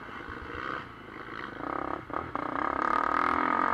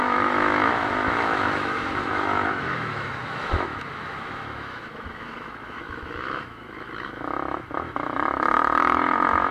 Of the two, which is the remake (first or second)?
second